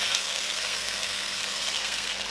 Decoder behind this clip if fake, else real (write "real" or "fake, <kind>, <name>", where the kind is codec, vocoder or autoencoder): fake, codec, SNAC